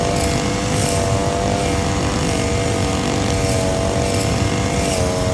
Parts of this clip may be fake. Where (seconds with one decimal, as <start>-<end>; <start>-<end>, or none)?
none